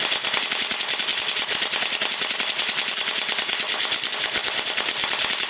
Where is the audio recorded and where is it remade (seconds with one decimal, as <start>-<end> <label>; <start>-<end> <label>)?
0.0-5.5 recorded